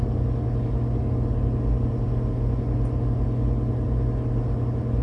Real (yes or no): yes